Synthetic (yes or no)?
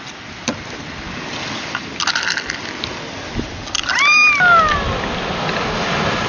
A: no